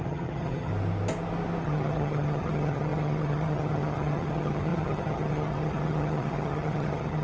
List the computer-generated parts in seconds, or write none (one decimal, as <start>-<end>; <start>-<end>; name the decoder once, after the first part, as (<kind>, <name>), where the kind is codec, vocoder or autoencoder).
0.0-0.7 (vocoder, HiFi-GAN); 1.6-7.2